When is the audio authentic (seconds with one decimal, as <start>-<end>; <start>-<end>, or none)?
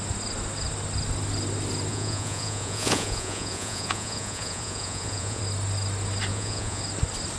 0.0-1.9; 5.4-6.3; 6.8-7.4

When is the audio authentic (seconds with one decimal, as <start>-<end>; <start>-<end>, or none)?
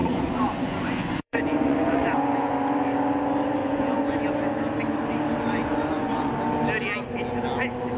2.5-3.6; 4.2-5.6; 6.3-8.0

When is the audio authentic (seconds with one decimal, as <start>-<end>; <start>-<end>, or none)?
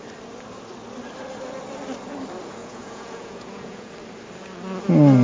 0.0-2.6; 3.9-5.2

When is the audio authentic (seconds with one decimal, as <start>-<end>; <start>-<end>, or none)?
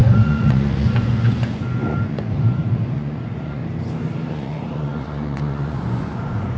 3.6-4.3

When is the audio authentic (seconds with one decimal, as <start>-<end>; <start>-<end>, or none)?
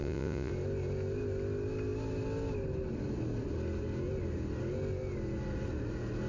0.5-6.3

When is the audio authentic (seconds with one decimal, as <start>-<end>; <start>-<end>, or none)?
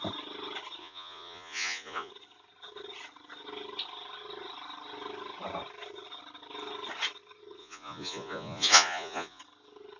0.0-0.8; 2.1-7.6; 9.4-10.0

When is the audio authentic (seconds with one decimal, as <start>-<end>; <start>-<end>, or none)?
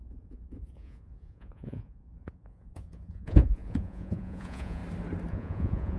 4.8-5.3